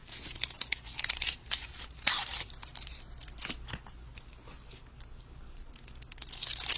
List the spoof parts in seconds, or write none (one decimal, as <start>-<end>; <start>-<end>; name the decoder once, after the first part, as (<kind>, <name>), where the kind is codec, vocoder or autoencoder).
0.0-3.0 (vocoder, BigVGAN v2)